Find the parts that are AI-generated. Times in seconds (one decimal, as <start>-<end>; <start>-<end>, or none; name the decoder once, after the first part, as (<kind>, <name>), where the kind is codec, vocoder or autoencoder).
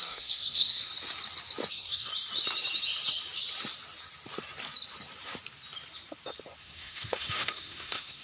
0.0-0.9 (codec, SNAC); 1.7-2.1; 6.6-8.2